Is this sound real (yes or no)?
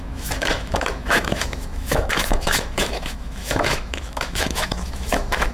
no